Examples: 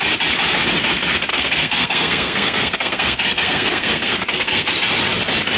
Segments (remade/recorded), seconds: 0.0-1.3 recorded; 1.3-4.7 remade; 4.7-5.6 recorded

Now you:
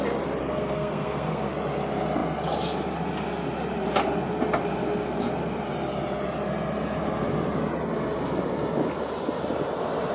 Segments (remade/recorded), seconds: 0.0-0.4 recorded; 0.4-1.5 remade; 1.5-10.1 recorded

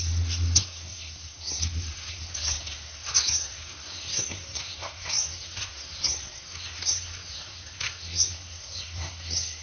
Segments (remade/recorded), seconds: 0.0-9.6 remade

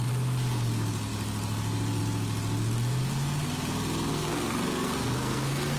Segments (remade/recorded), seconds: 0.0-4.1 recorded; 4.1-5.8 remade

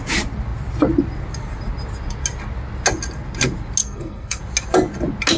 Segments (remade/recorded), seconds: 0.0-3.8 recorded; 3.8-4.4 remade; 4.4-5.4 recorded

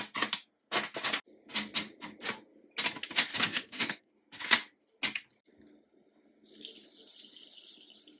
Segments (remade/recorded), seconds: 0.0-3.3 recorded; 3.3-4.1 remade; 4.1-8.2 recorded

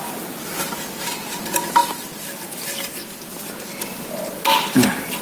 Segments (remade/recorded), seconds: 0.0-5.2 recorded